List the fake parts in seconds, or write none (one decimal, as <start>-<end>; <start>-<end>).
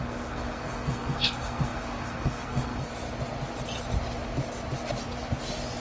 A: 0.0-2.9